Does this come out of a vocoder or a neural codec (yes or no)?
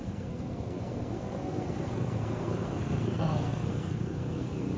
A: yes